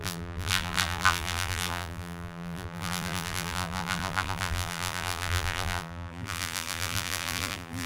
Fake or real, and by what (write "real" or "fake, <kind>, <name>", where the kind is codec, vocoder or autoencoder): fake, vocoder, BigVGAN v2